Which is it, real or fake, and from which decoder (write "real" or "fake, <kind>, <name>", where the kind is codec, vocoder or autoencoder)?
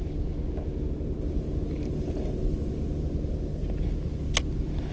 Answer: real